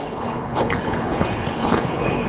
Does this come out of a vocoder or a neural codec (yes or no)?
yes